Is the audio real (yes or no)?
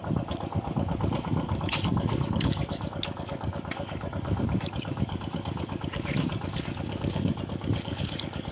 no